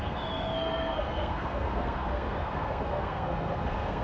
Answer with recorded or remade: remade